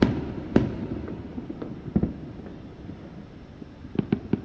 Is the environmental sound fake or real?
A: real